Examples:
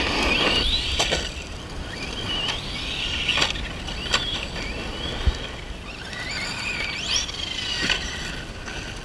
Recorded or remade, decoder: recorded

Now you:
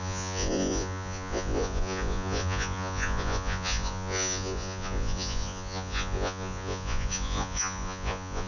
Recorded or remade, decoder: remade, vocoder, Vocos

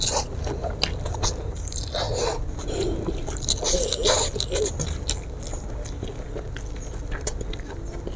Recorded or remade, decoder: recorded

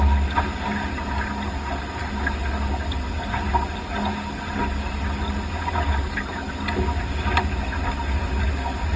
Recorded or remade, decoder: recorded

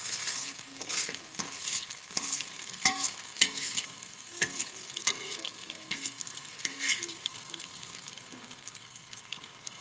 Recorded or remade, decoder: remade, codec, SNAC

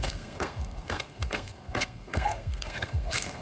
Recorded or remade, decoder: remade, codec, SNAC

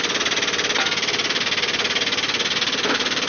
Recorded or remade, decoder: recorded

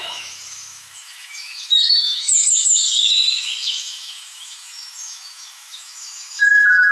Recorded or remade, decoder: remade, autoencoder, DAC-VAE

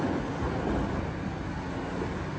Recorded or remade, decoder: recorded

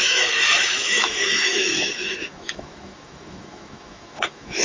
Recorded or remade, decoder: remade, autoencoder, DAC-VAE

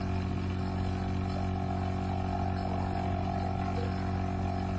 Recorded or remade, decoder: recorded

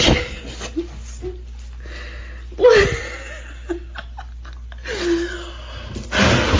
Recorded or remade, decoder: recorded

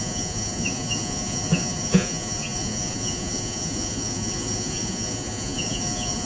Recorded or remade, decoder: remade, vocoder, Vocos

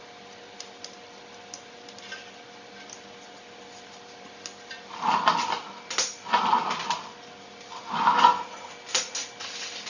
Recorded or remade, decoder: recorded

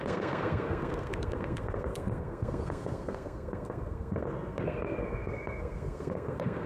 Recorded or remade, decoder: remade, codec, SNAC